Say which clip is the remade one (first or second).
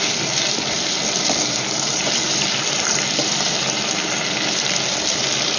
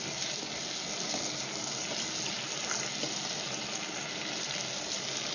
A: first